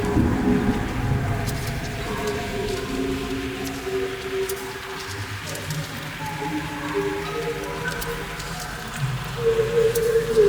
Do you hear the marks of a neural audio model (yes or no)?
no